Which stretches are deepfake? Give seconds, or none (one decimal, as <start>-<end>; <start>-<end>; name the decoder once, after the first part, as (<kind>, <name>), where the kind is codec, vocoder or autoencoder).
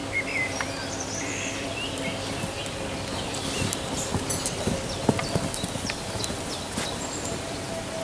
0.0-3.7 (vocoder, BigVGAN v2); 5.2-7.6